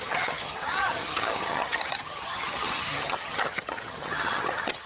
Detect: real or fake fake